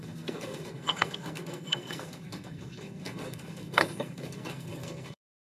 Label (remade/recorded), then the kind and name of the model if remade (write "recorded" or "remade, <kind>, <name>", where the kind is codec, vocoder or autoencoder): remade, codec, SNAC